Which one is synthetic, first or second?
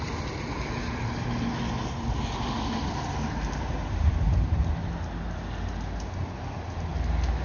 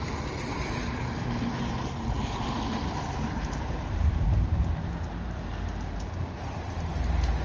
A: second